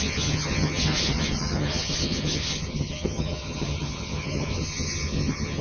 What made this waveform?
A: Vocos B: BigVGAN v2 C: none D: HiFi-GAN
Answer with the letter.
D